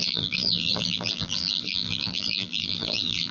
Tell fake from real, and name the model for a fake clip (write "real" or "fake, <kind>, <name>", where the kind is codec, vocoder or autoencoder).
fake, vocoder, BigVGAN v2